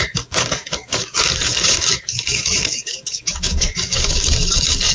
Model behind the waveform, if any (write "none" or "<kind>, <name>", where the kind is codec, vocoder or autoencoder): codec, DAC